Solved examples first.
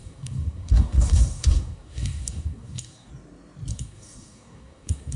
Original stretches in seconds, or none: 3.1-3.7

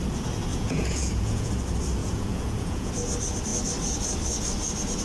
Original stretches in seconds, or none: 0.0-0.5; 1.5-2.0; 2.9-5.0

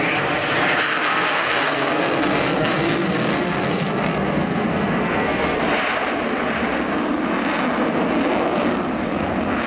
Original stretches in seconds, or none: 0.0-0.9; 5.6-9.7

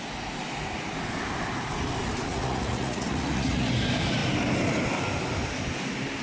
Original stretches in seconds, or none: 0.0-2.3; 3.7-6.2